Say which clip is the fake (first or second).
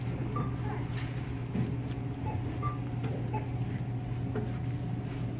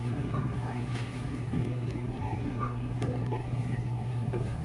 second